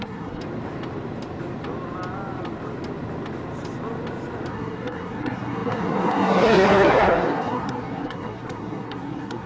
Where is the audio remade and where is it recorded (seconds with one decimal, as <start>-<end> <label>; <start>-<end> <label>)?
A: 0.0-0.4 remade; 0.4-4.5 recorded; 4.5-9.5 remade